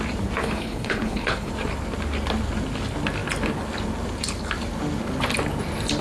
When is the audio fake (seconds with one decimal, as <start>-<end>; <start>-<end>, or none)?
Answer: 0.4-1.5